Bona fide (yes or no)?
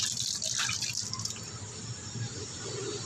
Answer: yes